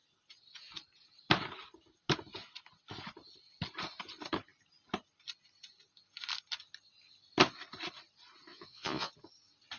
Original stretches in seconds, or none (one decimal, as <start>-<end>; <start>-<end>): 0.0-8.5; 9.1-9.8